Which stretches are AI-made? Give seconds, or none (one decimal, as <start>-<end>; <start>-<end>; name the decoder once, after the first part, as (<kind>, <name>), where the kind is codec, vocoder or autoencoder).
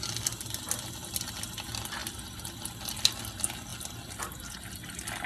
none